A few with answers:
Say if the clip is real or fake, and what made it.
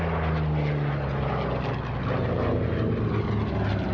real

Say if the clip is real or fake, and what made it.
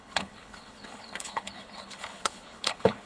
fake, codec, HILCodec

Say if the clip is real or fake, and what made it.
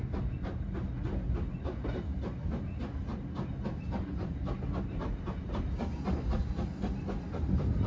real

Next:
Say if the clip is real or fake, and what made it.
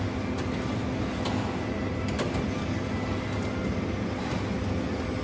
real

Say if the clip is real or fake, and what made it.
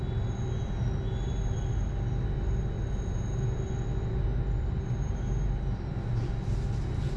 real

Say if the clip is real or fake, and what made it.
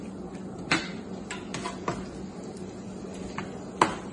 real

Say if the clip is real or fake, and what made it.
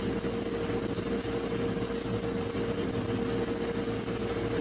real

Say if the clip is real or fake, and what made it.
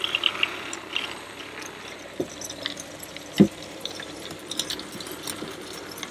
real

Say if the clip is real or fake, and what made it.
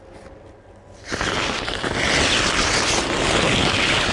real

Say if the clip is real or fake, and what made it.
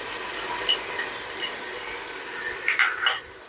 real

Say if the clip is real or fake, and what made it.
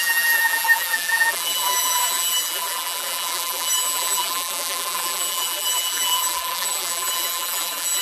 fake, vocoder, BigVGAN v2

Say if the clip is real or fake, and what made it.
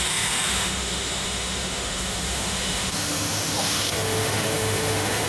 fake, autoencoder, DAC-VAE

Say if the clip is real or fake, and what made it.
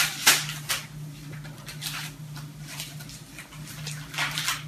real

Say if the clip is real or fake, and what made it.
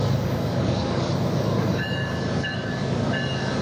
fake, codec, DAC